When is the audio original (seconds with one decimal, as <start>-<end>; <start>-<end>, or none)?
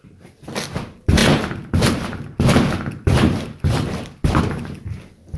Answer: 0.0-5.4